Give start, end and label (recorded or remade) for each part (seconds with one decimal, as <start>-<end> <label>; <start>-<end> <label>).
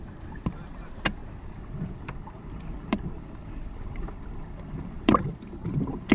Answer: 0.0-1.2 remade; 1.2-4.9 recorded; 4.9-6.1 remade